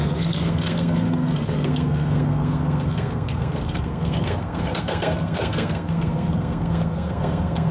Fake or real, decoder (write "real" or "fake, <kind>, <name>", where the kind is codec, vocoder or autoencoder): fake, codec, SNAC